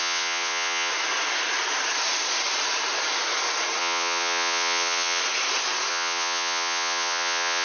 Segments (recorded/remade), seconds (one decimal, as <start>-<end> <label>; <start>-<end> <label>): 0.0-0.9 remade; 0.9-3.8 recorded; 3.8-5.2 remade; 5.2-5.9 recorded; 5.9-7.6 remade